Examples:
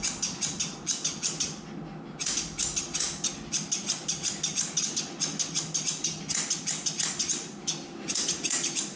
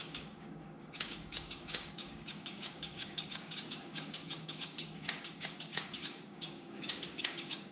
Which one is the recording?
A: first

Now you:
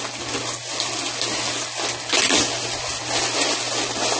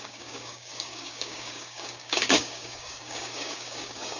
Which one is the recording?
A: first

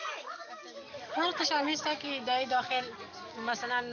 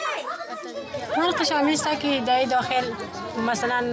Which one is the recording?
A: second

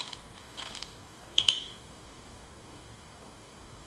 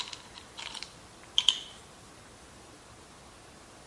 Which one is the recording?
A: second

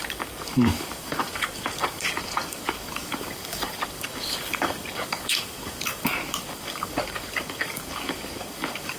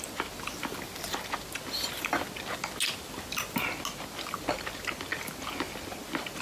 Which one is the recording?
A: second